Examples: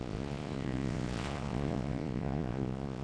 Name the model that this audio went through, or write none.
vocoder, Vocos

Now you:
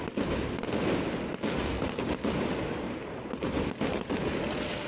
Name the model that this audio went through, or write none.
none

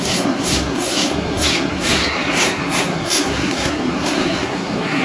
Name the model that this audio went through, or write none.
codec, SNAC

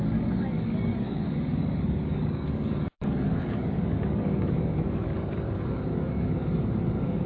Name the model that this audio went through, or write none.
codec, DAC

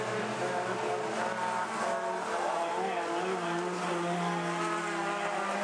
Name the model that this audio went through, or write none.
none